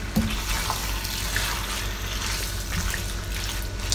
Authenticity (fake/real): real